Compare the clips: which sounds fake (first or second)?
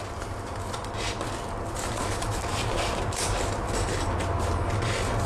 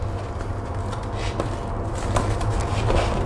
first